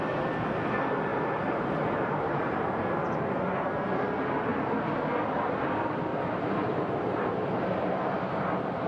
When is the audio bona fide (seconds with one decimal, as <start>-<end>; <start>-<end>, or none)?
0.0-1.1; 2.9-6.1; 7.7-8.9